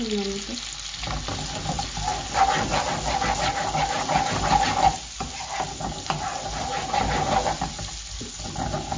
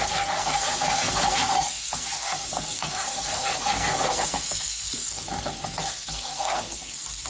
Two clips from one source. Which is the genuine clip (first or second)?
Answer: first